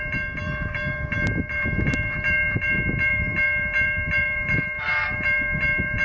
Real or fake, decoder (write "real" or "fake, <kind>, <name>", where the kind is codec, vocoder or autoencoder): fake, vocoder, BigVGAN v2